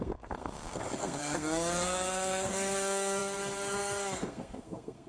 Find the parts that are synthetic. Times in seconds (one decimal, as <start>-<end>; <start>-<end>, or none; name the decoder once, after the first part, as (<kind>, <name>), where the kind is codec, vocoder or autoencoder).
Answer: 0.0-5.1 (codec, SNAC)